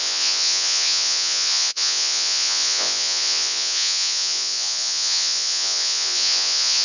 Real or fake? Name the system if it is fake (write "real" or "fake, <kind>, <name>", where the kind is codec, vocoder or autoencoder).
fake, vocoder, Vocos